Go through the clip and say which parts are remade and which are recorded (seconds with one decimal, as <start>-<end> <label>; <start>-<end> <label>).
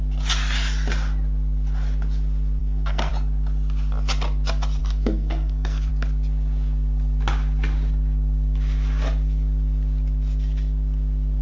0.0-2.6 recorded; 2.6-3.1 remade; 3.1-4.8 recorded; 4.8-5.9 remade; 5.9-11.4 recorded